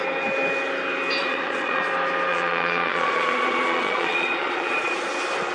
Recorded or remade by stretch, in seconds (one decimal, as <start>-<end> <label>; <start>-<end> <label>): 0.0-1.2 recorded; 1.2-1.8 remade; 1.8-2.3 recorded; 2.3-5.1 remade; 5.1-5.5 recorded